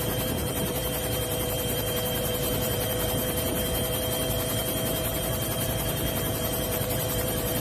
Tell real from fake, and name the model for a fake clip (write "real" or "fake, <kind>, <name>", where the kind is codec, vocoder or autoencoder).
fake, vocoder, BigVGAN v2